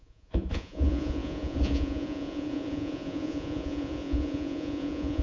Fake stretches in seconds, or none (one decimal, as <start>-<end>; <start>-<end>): 0.0-5.2